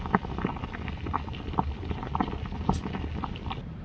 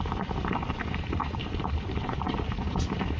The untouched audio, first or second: first